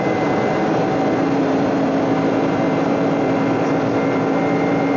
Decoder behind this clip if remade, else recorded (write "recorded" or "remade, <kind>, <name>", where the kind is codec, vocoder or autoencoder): remade, vocoder, BigVGAN v2